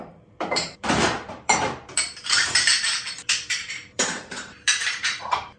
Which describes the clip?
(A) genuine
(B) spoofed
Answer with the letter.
B